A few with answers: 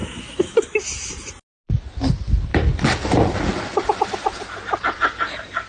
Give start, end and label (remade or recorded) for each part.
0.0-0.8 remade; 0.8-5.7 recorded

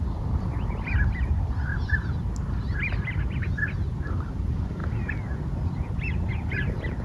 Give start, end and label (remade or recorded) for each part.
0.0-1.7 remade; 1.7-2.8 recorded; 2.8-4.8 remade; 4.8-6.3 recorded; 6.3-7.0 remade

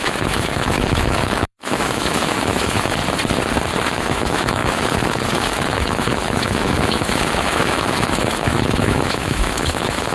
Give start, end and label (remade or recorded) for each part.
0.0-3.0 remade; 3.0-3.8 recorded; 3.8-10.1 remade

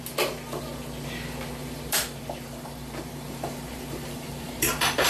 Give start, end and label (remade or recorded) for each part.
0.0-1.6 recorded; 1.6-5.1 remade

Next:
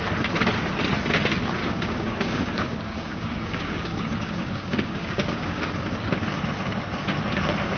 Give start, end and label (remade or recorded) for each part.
0.0-1.6 recorded; 1.6-5.7 remade; 5.7-7.8 recorded

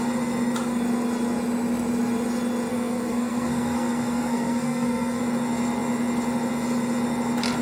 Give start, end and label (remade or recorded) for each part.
0.0-2.7 recorded; 2.7-5.2 remade; 5.2-7.6 recorded